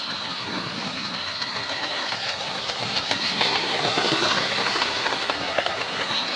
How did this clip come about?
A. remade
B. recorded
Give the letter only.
A